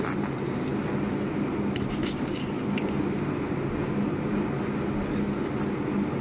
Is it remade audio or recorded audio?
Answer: recorded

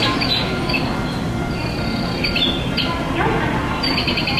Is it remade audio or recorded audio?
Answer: recorded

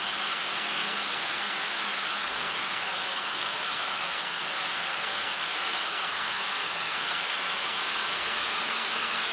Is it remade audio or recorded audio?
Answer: remade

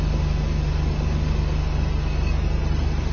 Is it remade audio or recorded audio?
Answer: recorded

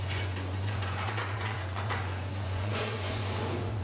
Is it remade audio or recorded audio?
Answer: remade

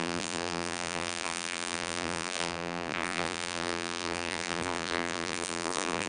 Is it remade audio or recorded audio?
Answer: remade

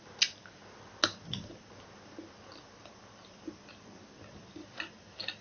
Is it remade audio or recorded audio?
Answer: recorded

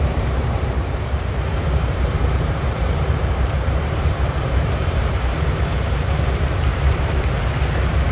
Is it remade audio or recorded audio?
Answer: remade